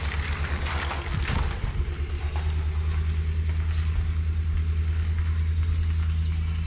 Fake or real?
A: real